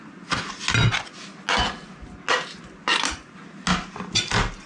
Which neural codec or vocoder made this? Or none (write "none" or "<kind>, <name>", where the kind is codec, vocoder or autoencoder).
none